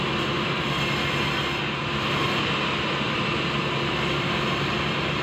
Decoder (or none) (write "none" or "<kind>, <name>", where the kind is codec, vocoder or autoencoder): none